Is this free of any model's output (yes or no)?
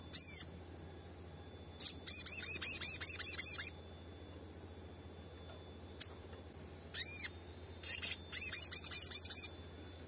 yes